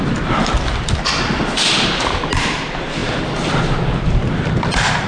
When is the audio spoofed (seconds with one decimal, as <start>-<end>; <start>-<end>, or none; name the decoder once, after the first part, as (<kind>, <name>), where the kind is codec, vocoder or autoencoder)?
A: none